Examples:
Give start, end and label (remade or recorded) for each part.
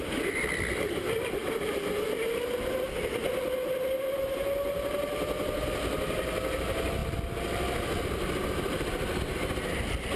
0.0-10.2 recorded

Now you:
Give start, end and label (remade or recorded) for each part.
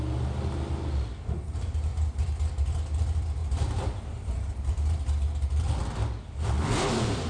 0.0-1.9 recorded; 1.9-2.5 remade; 2.5-3.4 recorded; 3.4-5.0 remade; 5.0-7.3 recorded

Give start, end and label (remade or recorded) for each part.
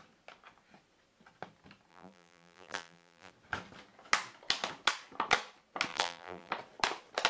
0.0-1.9 recorded; 1.9-3.3 remade; 3.3-5.9 recorded; 5.9-6.5 remade; 6.5-7.3 recorded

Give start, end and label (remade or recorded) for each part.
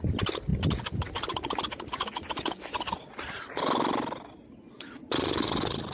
0.0-5.9 recorded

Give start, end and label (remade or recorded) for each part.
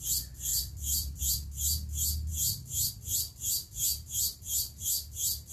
0.0-0.5 recorded; 0.5-1.2 remade; 1.2-2.3 recorded; 2.3-2.9 remade; 2.9-5.5 recorded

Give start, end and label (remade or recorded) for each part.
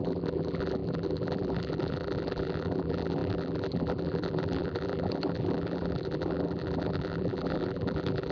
0.0-8.3 remade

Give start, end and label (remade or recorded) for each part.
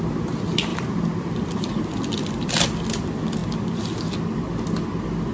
0.0-0.7 recorded; 0.7-2.5 remade; 2.5-5.3 recorded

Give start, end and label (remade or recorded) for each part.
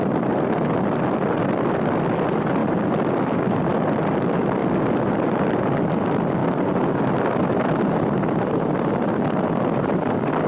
0.0-4.6 remade; 4.6-5.5 recorded; 5.5-6.4 remade; 6.4-7.9 recorded; 7.9-10.5 remade